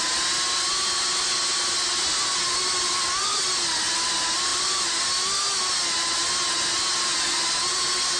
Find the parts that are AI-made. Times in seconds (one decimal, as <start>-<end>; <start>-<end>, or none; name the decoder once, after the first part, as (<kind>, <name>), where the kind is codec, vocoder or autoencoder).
none